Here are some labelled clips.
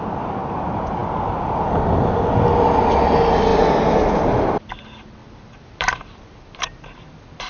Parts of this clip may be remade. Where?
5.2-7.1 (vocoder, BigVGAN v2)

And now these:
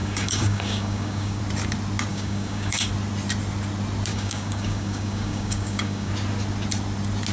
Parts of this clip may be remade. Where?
0.0-1.4 (codec, DAC); 2.1-2.9; 4.1-6.1

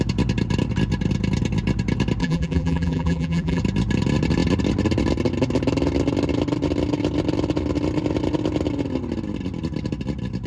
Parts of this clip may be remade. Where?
2.2-3.6 (vocoder, BigVGAN v2)

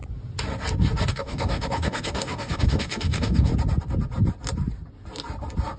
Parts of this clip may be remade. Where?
1.1-3.5 (codec, DAC)

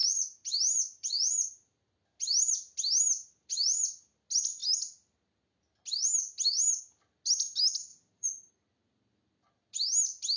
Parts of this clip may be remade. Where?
7.9-8.5 (vocoder, BigVGAN v2)

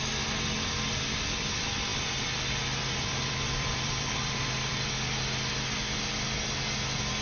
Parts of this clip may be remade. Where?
1.9-4.9 (vocoder, BigVGAN v2)